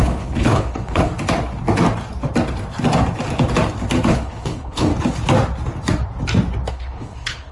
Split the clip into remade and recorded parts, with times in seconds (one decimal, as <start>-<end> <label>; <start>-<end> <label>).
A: 0.0-1.1 remade; 1.1-4.1 recorded; 4.1-4.9 remade; 4.9-6.7 recorded; 6.7-7.5 remade